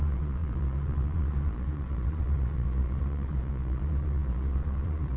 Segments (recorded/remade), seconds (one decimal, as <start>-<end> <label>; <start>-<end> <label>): 0.0-5.2 remade